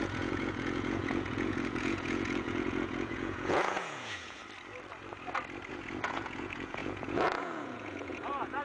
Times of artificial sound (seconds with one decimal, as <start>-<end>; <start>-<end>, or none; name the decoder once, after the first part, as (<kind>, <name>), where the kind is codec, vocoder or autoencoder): 0.0-4.4 (vocoder, Vocos); 5.7-8.6